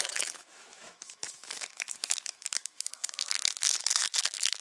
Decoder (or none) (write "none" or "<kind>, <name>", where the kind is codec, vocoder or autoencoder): autoencoder, DAC-VAE